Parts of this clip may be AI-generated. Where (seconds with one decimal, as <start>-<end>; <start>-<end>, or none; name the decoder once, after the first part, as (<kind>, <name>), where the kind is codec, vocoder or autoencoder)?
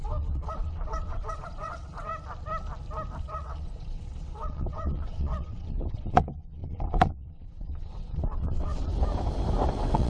0.0-2.1 (vocoder, WaveNeXt); 3.2-8.9; 9.7-10.1